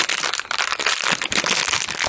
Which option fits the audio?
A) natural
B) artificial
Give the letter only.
A